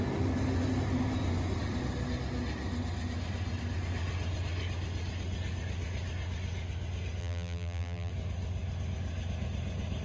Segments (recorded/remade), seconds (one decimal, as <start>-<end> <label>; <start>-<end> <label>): 0.0-7.2 recorded; 7.2-8.1 remade; 8.1-10.0 recorded